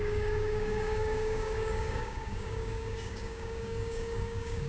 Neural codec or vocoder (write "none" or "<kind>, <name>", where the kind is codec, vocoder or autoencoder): codec, DAC